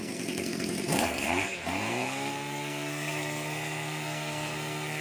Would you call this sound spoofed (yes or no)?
yes